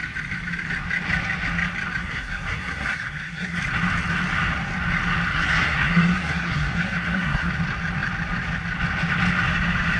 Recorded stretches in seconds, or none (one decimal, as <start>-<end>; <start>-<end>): 0.0-2.0; 3.6-5.3; 7.5-10.0